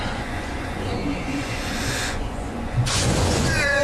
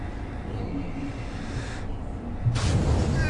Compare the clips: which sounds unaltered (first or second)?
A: second